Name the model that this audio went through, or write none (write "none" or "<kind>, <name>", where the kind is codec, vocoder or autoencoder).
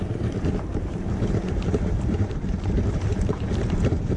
vocoder, BigVGAN v2